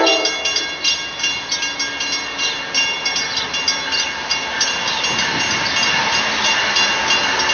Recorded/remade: recorded